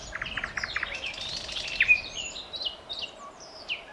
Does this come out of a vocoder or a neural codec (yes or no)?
no